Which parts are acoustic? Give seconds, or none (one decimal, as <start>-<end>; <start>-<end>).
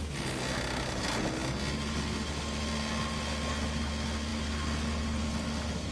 0.0-5.9